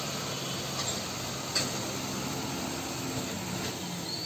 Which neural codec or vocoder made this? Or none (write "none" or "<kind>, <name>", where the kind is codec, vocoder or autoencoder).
none